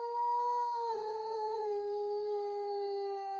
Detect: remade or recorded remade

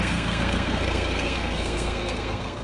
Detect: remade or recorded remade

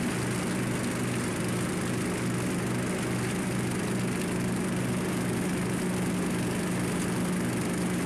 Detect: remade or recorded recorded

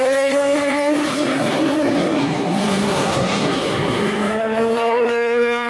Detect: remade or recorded remade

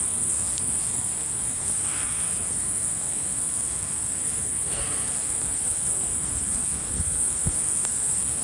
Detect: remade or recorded remade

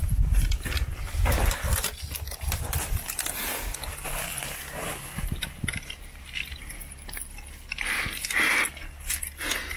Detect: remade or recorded recorded